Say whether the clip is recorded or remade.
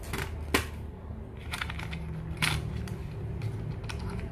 recorded